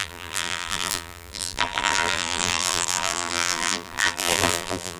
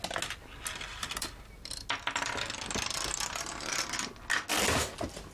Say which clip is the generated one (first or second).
first